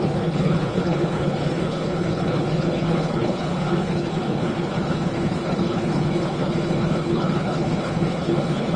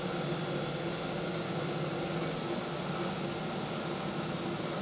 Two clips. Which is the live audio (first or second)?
second